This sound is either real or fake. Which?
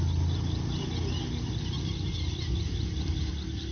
real